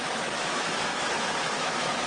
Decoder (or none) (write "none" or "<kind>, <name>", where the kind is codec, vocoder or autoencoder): autoencoder, DAC-VAE